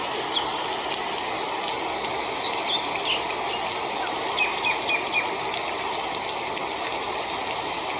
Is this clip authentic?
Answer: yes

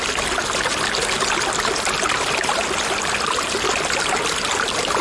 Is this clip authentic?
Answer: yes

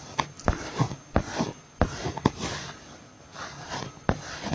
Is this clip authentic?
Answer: yes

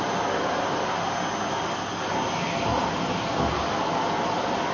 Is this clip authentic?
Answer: yes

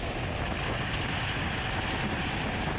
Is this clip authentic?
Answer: yes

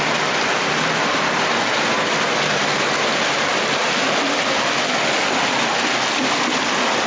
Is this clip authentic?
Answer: yes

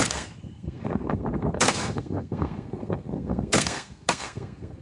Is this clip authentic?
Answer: no